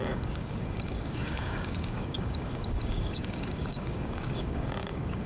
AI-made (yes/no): yes